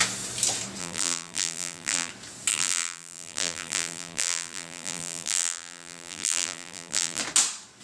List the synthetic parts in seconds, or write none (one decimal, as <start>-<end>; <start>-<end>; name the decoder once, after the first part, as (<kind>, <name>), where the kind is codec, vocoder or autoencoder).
0.8-2.1 (vocoder, BigVGAN v2); 2.5-7.2